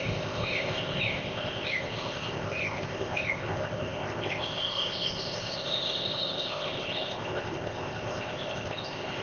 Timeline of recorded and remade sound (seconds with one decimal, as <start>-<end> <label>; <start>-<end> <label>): 0.0-9.2 remade